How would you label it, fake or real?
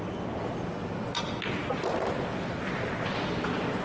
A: real